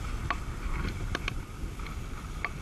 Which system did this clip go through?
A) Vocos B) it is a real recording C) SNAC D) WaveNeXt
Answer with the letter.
B